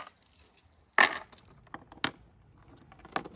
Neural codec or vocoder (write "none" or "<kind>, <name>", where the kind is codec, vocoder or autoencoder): none